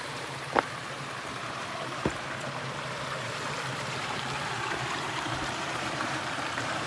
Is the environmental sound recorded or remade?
remade